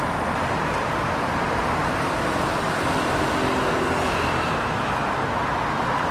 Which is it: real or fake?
real